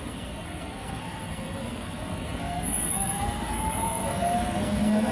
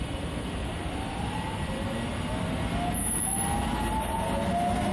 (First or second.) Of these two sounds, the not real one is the first